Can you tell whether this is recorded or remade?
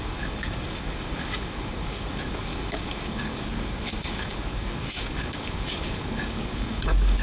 remade